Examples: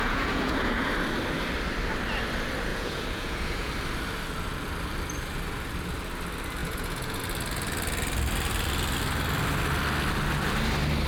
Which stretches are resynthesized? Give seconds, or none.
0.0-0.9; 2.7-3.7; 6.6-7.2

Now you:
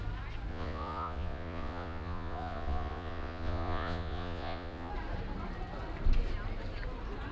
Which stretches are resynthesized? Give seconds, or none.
0.5-4.9

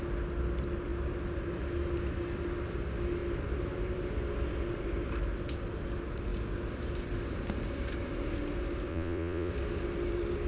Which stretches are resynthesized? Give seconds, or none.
8.9-9.5

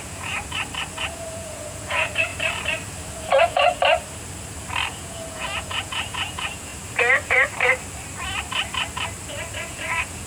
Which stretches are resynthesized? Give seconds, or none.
0.0-0.4; 1.0-2.3; 3.4-3.8; 4.9-6.7; 9.5-10.3

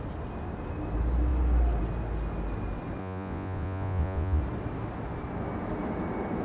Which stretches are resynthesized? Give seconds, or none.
3.0-4.4

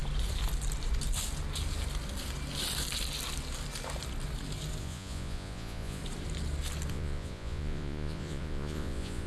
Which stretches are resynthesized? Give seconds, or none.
4.8-6.0; 6.9-9.3

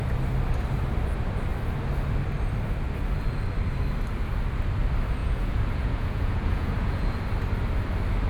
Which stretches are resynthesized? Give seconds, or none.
5.2-7.2

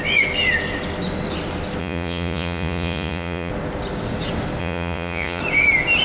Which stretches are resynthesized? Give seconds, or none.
1.8-3.5; 4.6-5.4